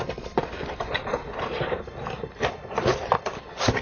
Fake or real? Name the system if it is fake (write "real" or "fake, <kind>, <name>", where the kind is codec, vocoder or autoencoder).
fake, vocoder, BigVGAN v2